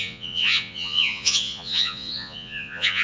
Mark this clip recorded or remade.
remade